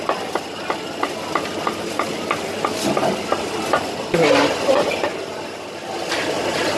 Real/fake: real